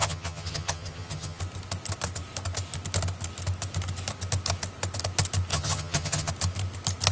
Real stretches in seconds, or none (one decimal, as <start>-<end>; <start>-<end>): 1.4-5.5; 6.3-7.1